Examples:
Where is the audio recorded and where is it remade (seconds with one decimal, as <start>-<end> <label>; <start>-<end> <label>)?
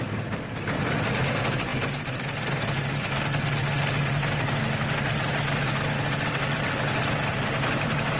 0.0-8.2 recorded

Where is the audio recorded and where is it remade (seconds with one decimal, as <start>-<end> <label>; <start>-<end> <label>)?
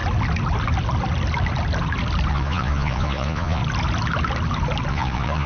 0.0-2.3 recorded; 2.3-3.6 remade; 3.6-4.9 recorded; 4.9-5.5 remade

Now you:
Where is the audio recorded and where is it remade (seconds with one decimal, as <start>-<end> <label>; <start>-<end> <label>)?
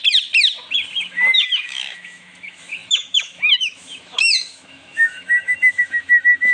0.0-1.0 recorded; 1.0-6.5 remade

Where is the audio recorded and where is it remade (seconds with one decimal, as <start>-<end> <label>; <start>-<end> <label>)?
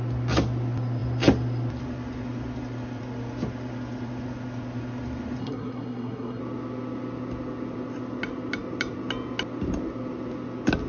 0.0-5.4 recorded; 5.4-6.4 remade; 6.4-10.9 recorded